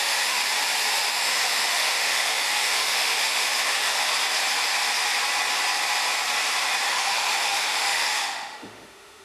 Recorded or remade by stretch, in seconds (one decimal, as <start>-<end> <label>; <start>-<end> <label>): 0.0-0.4 remade; 0.4-1.1 recorded; 1.1-4.0 remade; 4.0-6.9 recorded; 6.9-9.2 remade